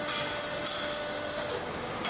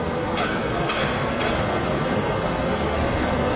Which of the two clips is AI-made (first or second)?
second